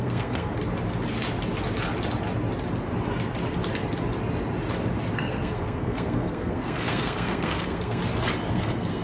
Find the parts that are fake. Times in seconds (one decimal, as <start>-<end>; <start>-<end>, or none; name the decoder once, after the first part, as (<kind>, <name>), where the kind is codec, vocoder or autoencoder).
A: 0.0-0.5 (codec, SNAC); 5.1-8.0; 8.5-9.0